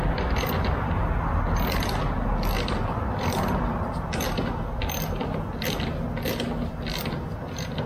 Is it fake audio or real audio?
real